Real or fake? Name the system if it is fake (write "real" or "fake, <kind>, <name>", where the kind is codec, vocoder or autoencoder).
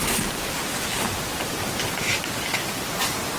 real